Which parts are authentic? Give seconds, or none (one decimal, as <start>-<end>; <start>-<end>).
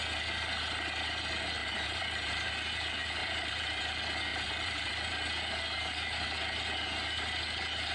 0.0-1.6; 2.5-3.2; 3.8-4.3; 5.1-7.9